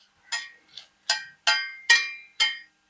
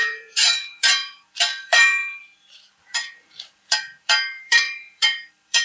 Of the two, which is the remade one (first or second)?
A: second